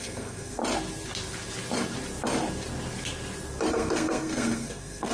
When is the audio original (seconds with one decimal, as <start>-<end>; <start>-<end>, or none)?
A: 0.6-3.7